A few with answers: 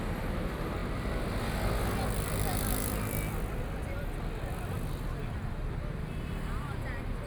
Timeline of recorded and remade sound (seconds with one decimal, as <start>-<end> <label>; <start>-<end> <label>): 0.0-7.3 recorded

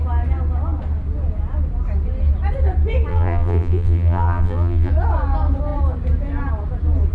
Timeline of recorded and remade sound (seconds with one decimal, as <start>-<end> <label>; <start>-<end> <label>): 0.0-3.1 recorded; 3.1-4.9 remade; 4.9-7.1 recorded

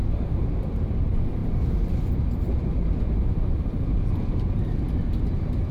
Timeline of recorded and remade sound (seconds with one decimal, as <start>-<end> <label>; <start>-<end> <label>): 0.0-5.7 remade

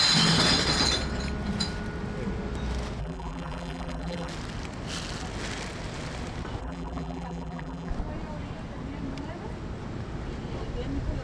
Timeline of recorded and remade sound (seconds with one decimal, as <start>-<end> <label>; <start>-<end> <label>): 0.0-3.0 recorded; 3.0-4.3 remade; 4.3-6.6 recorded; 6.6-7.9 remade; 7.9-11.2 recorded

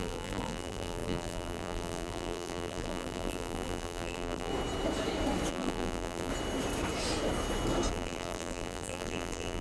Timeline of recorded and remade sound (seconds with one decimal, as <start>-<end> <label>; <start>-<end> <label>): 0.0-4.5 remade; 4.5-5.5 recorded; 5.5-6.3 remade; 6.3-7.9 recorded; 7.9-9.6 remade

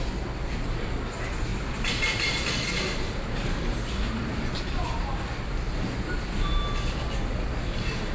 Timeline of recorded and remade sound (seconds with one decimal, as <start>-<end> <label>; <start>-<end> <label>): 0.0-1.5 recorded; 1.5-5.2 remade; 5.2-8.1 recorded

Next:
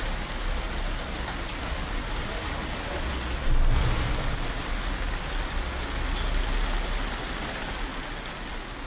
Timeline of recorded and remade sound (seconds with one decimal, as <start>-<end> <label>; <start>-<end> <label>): 0.0-2.3 recorded; 2.3-3.1 remade; 3.1-8.9 recorded